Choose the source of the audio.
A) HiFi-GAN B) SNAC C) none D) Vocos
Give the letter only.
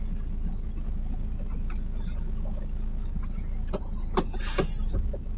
C